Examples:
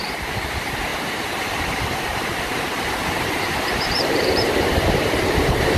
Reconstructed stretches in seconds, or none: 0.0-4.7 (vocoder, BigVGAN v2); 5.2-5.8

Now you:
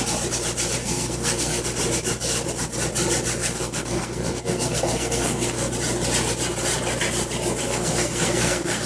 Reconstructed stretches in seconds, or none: 0.8-1.6 (codec, SNAC); 3.4-5.7; 7.6-8.9

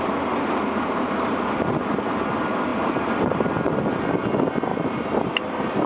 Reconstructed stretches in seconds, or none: 2.7-3.5 (vocoder, BigVGAN v2); 4.7-5.9

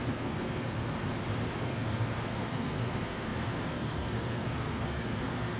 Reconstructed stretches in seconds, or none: 0.0-0.8 (codec, SNAC); 1.6-5.6

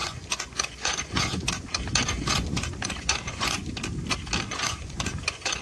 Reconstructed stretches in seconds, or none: 0.0-3.6 (vocoder, Vocos); 4.5-5.6

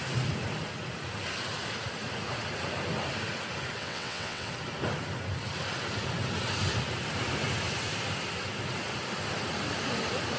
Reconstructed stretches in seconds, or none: 3.8-4.5 (vocoder, WaveNeXt)

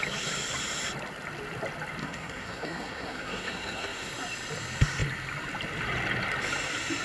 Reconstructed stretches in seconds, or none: 2.0-4.1 (codec, SNAC)